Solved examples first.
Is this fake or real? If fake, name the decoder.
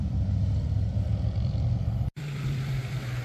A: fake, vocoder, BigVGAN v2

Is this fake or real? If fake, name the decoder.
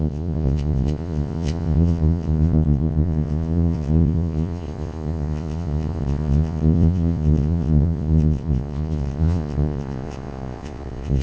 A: fake, vocoder, Vocos